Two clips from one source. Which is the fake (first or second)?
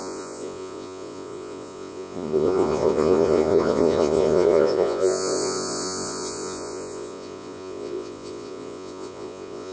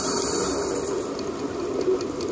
first